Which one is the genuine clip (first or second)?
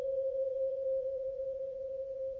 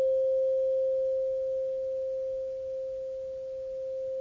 second